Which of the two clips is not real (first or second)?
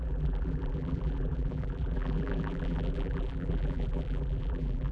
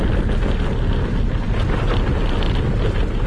first